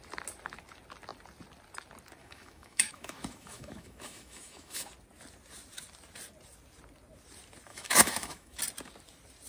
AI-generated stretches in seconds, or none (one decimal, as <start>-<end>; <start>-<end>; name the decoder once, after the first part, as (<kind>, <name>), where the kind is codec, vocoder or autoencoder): 2.2-4.9 (autoencoder, DAC-VAE); 7.7-8.6